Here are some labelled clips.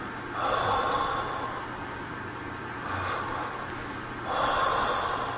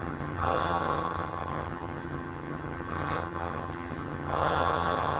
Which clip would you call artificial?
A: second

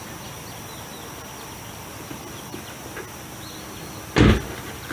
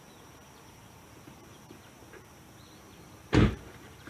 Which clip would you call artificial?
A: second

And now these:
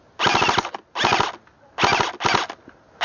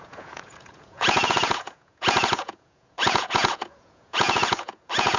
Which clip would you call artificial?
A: second